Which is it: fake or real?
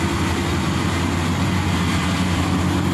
real